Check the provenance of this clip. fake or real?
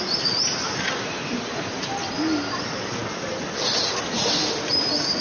real